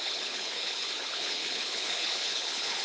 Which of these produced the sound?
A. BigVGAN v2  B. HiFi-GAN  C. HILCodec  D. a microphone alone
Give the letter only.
C